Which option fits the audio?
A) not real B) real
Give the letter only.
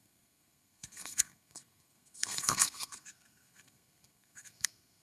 A